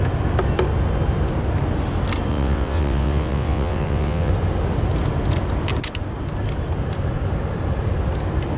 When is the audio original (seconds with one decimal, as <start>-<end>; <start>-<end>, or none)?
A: 0.0-2.3; 4.3-8.6